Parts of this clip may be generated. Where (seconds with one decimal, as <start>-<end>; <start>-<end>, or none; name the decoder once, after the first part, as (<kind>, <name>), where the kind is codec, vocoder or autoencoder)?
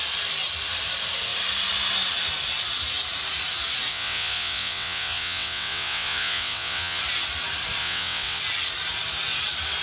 3.9-7.0 (vocoder, WaveNeXt); 7.8-8.4